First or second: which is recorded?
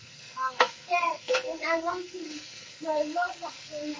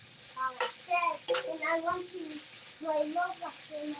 second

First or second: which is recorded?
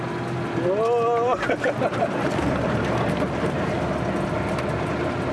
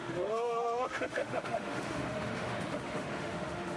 first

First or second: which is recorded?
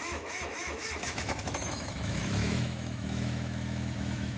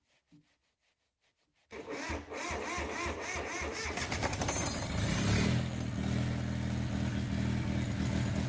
second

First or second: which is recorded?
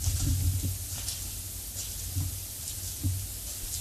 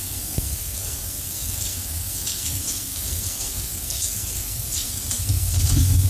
first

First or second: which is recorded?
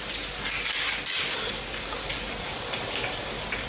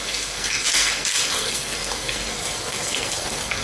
first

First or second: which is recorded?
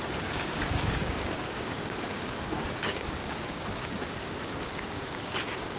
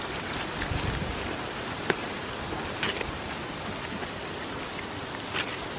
second